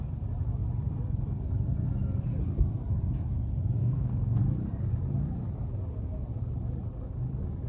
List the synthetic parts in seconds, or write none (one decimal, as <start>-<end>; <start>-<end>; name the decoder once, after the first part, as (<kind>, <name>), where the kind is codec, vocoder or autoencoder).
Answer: 3.8-4.4 (codec, SNAC)